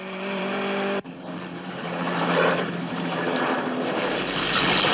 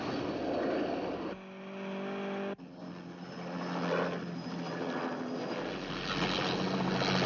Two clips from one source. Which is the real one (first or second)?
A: second